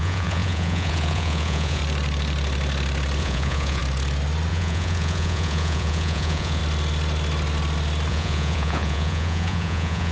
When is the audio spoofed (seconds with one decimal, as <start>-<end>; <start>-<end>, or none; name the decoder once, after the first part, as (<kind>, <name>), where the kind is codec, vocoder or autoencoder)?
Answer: 0.0-1.8 (vocoder, Vocos); 3.2-3.8; 4.5-6.6; 8.1-10.1